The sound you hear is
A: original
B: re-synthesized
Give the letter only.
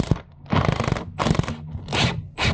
A